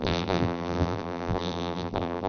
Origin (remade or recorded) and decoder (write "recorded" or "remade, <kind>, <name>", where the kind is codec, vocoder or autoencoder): remade, vocoder, BigVGAN v2